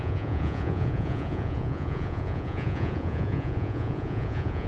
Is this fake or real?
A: fake